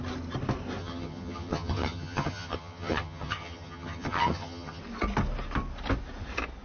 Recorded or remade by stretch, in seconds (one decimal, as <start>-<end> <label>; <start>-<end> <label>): 0.0-0.8 recorded; 0.8-4.8 remade; 4.8-6.6 recorded